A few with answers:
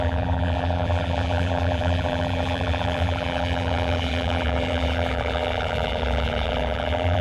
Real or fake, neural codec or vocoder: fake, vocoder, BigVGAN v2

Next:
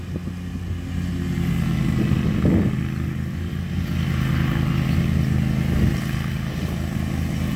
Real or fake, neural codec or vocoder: real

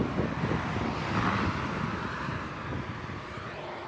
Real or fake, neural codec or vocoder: fake, vocoder, BigVGAN v2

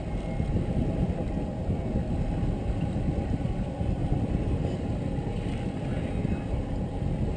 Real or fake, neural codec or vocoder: real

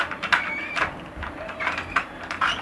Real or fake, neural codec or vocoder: fake, vocoder, BigVGAN v2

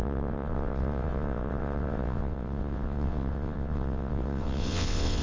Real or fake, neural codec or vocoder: fake, vocoder, WaveNeXt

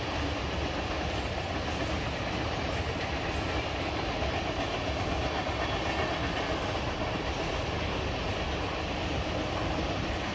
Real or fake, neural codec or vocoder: real